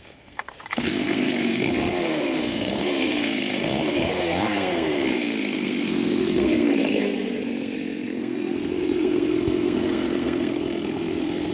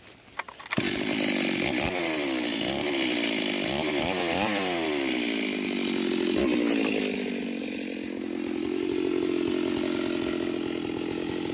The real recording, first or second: second